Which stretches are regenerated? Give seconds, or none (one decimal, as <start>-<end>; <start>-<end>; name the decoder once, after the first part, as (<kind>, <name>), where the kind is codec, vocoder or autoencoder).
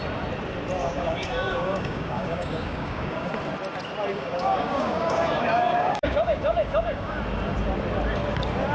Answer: 0.8-3.3 (codec, DAC); 4.1-7.2